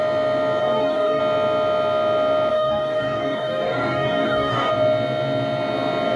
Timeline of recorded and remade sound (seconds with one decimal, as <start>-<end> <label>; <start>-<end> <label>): 0.0-0.6 recorded; 0.6-1.2 remade; 1.2-2.5 recorded; 2.5-4.7 remade; 4.7-6.2 recorded